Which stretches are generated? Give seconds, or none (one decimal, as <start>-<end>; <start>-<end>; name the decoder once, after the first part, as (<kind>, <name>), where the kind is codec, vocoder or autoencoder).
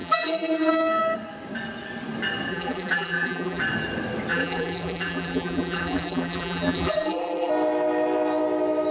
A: 0.0-0.7 (vocoder, BigVGAN v2); 2.5-3.6; 4.3-7.5